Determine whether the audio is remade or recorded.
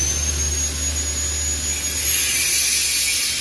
recorded